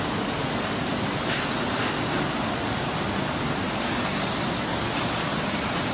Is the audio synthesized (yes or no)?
no